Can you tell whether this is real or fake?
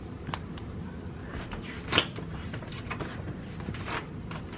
real